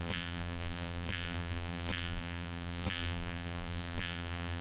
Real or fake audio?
fake